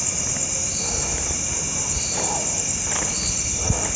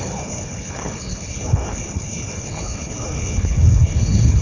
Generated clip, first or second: second